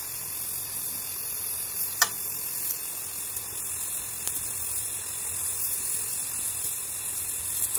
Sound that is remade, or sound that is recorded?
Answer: remade